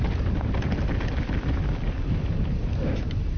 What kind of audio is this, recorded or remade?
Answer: recorded